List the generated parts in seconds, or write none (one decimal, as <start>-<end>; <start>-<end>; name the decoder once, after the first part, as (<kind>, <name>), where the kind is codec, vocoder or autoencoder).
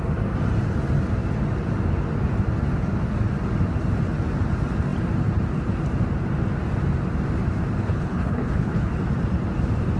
7.8-8.9 (codec, HILCodec)